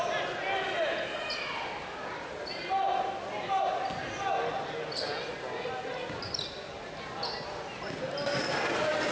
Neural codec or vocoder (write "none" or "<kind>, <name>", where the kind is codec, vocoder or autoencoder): none